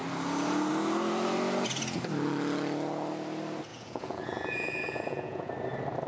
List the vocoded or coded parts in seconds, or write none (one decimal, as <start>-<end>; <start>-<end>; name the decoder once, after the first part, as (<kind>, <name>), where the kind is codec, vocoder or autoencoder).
3.7-5.5 (vocoder, Vocos)